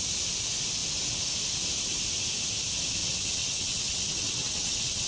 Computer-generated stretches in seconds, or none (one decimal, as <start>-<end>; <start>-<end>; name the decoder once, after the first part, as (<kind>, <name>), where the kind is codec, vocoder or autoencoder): 3.0-5.1 (vocoder, WaveNeXt)